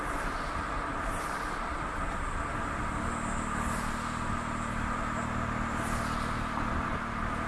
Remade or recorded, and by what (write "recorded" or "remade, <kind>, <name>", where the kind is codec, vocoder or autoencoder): recorded